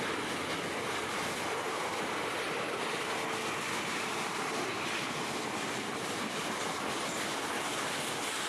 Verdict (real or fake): real